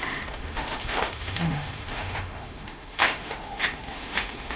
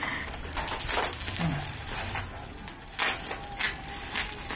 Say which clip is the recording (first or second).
second